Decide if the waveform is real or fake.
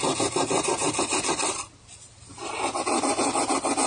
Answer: real